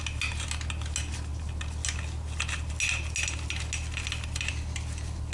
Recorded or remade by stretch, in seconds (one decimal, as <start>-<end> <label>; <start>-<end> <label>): 0.0-5.3 recorded